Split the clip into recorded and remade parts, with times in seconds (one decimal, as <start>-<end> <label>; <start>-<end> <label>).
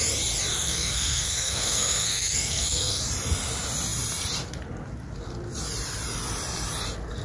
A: 0.0-0.5 recorded; 0.5-3.0 remade; 3.0-7.2 recorded